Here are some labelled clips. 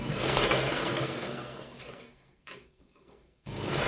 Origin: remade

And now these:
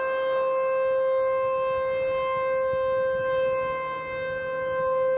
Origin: recorded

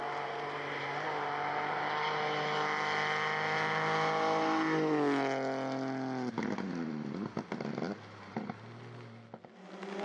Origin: recorded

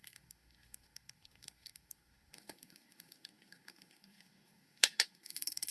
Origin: remade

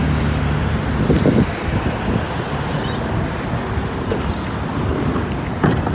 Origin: recorded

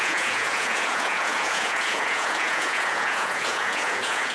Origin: remade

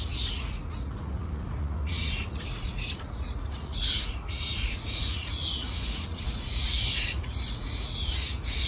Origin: remade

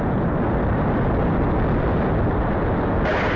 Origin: recorded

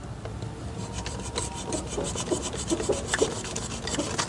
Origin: recorded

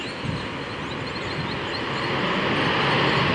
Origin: recorded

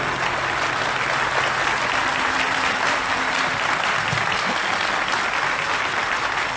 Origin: recorded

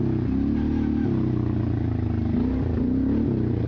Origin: recorded